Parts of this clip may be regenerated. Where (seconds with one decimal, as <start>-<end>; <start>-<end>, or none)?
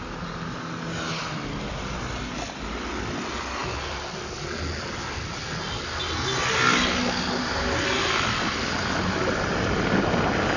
none